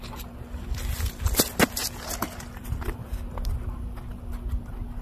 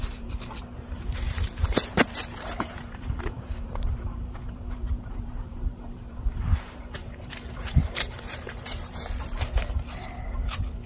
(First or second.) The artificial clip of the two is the second